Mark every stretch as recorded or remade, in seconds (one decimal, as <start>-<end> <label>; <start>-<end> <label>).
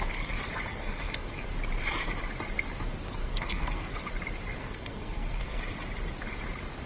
0.0-0.7 recorded; 0.7-1.4 remade; 1.4-3.2 recorded; 3.2-3.9 remade; 3.9-4.6 recorded; 4.6-5.6 remade; 5.6-6.9 recorded